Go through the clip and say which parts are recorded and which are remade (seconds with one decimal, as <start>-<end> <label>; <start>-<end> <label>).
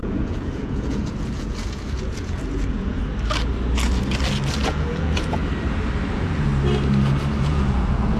0.0-3.0 remade; 3.0-4.6 recorded; 4.6-5.4 remade; 5.4-6.1 recorded; 6.1-6.5 remade; 6.5-7.4 recorded; 7.4-8.2 remade